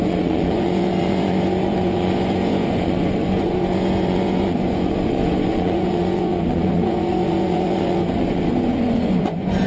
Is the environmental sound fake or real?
fake